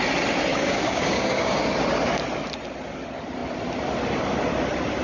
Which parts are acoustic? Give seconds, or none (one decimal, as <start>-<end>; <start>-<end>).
0.0-0.5; 1.6-5.0